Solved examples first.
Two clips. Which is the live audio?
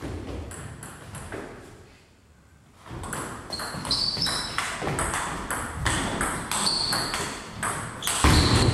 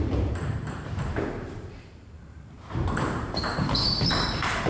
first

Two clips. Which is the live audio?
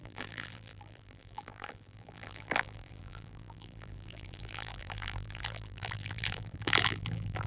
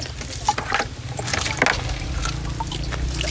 second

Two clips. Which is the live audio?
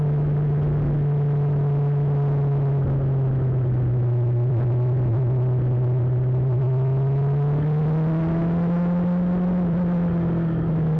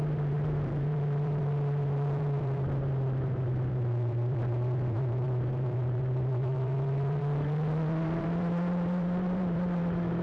first